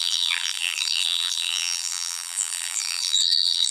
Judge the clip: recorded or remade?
remade